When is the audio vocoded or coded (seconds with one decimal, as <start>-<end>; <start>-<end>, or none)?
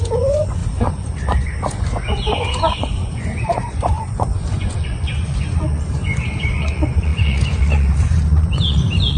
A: 0.0-9.2